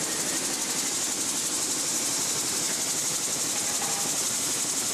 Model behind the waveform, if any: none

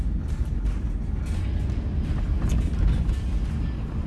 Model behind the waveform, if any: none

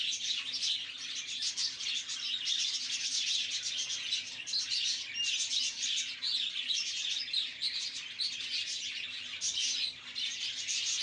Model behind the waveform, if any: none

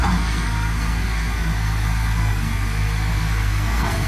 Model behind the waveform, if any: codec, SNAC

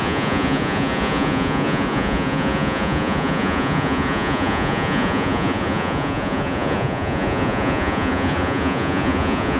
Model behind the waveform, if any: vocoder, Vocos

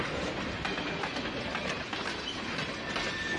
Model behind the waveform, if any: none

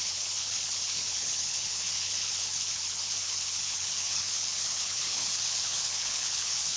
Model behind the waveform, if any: codec, HILCodec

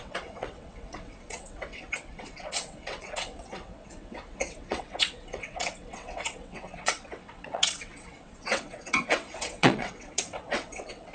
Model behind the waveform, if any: vocoder, WaveNeXt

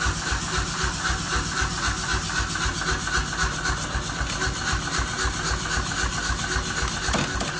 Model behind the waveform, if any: none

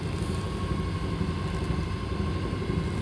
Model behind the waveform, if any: none